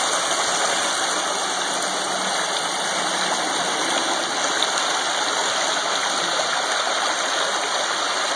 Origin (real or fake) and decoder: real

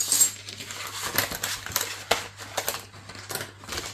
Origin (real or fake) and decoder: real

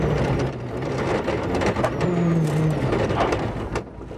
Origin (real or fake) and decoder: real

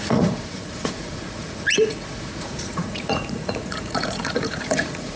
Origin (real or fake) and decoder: fake, vocoder, Vocos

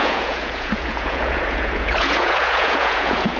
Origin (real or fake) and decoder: fake, vocoder, Vocos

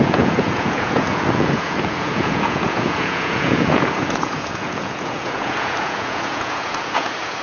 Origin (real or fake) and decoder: fake, vocoder, Vocos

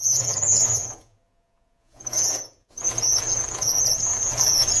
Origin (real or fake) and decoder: fake, vocoder, Vocos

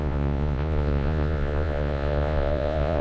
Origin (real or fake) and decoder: fake, vocoder, Vocos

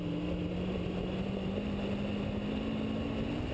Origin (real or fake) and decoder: real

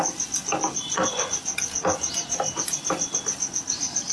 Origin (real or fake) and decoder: real